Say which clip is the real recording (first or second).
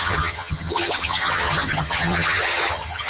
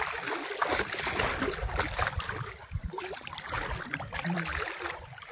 second